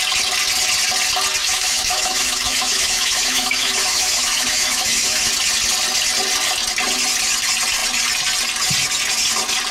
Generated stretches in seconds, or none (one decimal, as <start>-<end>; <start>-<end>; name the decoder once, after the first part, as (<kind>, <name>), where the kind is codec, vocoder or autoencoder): 1.4-5.3 (autoencoder, DAC-VAE)